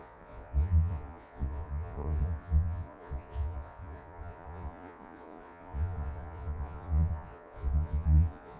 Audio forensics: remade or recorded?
remade